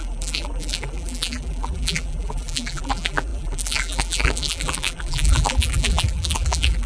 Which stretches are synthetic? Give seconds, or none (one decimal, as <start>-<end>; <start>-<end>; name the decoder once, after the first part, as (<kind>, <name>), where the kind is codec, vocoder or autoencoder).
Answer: 0.0-6.9 (vocoder, BigVGAN v2)